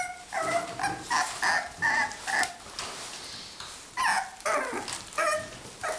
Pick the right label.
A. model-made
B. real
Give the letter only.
B